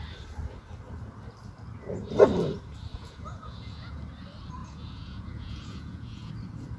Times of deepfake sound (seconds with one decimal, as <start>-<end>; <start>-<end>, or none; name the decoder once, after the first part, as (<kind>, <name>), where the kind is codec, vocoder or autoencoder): 2.9-4.0 (vocoder, Vocos); 4.6-6.3